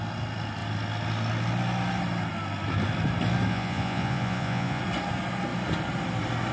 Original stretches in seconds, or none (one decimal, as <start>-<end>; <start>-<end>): 0.0-3.5; 4.8-6.5